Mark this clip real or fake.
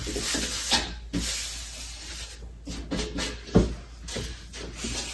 real